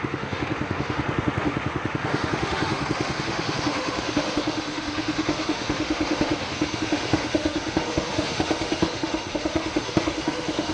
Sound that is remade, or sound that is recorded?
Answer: remade